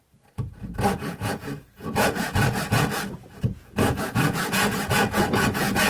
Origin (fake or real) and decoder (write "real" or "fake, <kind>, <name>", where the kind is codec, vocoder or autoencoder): fake, vocoder, Vocos